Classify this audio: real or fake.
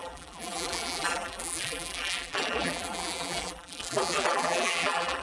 fake